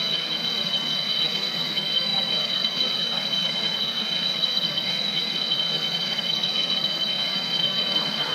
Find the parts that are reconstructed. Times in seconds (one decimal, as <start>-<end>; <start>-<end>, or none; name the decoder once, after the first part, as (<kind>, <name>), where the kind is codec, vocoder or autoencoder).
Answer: 0.0-8.3 (codec, SNAC)